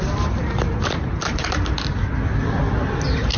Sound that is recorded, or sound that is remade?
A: remade